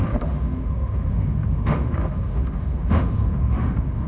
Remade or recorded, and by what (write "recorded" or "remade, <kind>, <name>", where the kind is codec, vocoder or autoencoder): remade, autoencoder, DAC-VAE